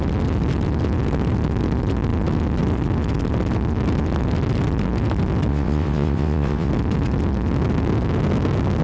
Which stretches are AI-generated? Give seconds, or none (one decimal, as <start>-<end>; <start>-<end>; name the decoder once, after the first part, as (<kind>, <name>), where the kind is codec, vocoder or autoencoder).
5.5-6.7 (vocoder, WaveNeXt)